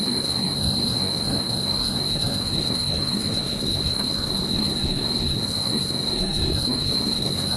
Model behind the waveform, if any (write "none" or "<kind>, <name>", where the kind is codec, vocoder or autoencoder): codec, SNAC